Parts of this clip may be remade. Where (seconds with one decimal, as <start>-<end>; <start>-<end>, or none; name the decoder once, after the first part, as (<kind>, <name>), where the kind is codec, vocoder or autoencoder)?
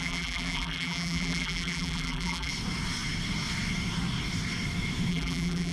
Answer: 0.0-2.5 (vocoder, BigVGAN v2); 5.1-5.7